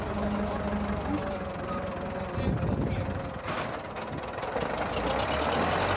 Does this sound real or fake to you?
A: real